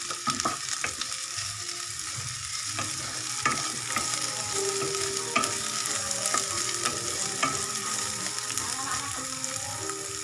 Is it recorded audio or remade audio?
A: recorded